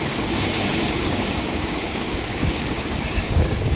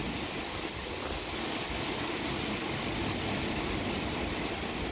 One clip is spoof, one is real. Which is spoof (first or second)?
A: first